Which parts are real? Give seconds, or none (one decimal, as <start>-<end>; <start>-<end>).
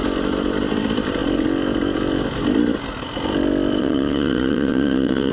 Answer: 0.0-3.8